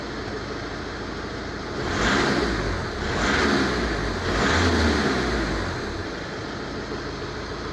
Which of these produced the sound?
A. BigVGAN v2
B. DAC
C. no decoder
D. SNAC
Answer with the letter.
C